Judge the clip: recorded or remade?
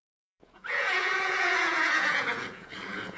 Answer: remade